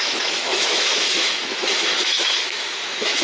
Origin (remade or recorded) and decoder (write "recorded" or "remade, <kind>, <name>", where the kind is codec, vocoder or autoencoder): remade, autoencoder, DAC-VAE